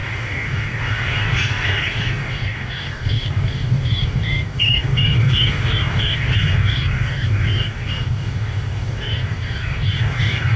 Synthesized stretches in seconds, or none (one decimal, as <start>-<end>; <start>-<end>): 0.0-10.6